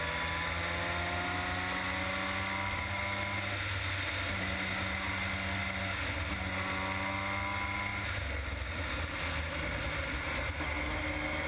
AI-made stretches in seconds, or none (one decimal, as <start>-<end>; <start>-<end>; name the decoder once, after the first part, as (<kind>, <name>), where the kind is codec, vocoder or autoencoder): none